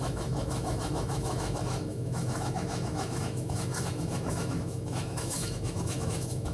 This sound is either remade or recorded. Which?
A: remade